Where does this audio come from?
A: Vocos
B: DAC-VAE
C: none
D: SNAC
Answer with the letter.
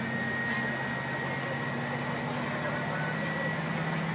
C